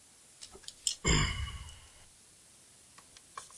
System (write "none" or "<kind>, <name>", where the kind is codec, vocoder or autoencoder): none